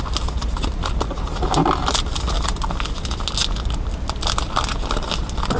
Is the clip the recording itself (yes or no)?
yes